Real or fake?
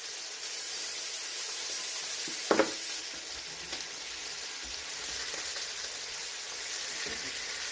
real